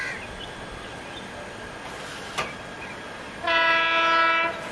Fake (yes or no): no